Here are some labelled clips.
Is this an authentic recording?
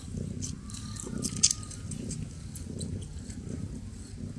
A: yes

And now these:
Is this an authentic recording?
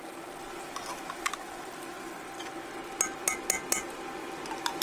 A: yes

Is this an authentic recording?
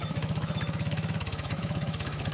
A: no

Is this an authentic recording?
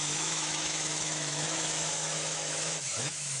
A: no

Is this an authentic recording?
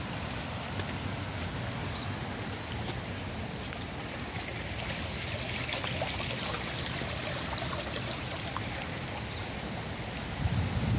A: yes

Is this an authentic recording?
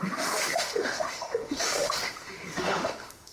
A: no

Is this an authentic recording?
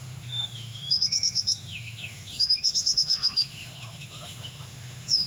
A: no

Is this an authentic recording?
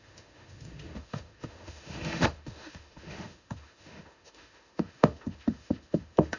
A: no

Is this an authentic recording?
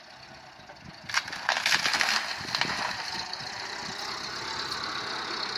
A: yes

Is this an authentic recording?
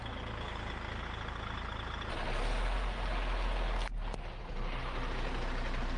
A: yes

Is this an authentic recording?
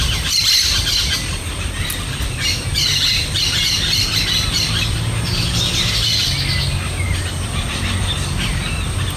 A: yes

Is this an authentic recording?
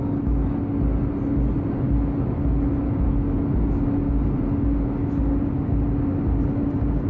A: yes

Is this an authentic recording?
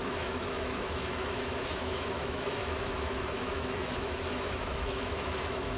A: no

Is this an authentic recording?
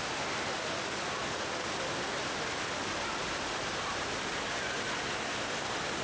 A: yes